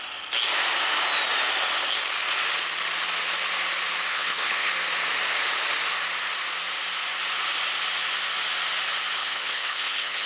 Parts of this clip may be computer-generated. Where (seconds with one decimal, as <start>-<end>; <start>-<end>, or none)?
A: 4.1-4.7; 9.2-10.3